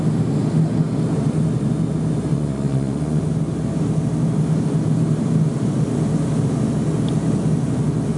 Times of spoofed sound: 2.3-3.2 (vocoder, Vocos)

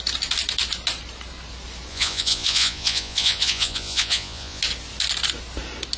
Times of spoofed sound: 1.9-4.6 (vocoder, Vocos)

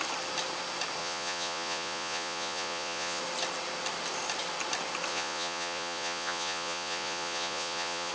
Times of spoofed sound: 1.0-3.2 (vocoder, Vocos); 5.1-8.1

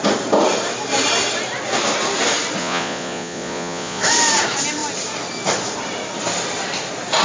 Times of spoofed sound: 2.6-4.0 (vocoder, Vocos)

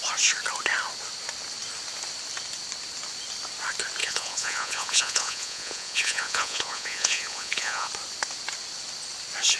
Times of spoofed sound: 4.0-7.9 (vocoder, Vocos)